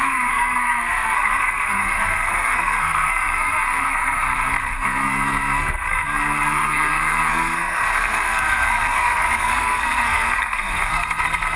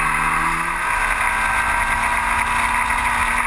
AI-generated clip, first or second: first